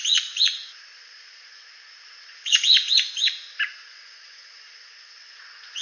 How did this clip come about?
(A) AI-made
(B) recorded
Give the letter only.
A